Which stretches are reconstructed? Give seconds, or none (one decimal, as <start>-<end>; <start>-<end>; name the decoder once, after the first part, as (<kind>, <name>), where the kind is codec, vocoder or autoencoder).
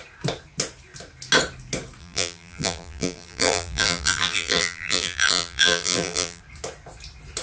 2.0-6.4 (vocoder, BigVGAN v2)